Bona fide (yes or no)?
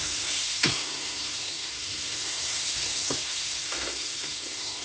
no